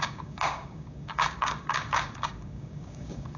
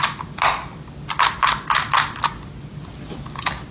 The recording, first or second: second